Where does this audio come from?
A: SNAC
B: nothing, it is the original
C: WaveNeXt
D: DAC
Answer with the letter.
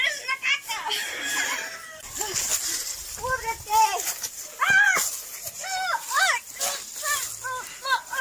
B